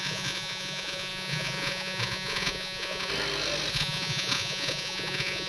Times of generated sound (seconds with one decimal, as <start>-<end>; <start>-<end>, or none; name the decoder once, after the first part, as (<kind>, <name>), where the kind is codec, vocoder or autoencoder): 0.0-3.1 (vocoder, Vocos); 3.7-5.5